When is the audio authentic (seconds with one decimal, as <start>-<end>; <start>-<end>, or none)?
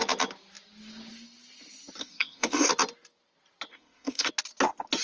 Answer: 0.0-2.0; 2.7-3.7; 4.3-5.0